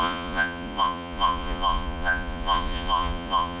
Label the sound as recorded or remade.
remade